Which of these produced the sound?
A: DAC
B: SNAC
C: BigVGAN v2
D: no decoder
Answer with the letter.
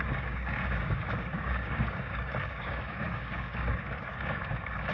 A